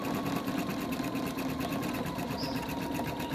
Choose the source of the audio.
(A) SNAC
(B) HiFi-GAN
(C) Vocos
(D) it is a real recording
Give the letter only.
D